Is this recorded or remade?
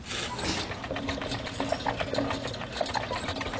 recorded